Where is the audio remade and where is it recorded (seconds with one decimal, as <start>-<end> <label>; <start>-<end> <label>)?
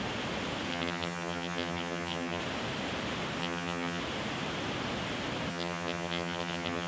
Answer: 0.0-0.7 recorded; 0.7-2.4 remade; 2.4-3.4 recorded; 3.4-4.0 remade; 4.0-5.5 recorded; 5.5-6.9 remade